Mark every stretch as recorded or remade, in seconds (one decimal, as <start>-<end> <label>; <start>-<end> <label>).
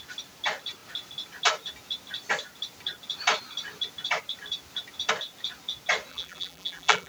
0.0-6.1 recorded; 6.1-7.1 remade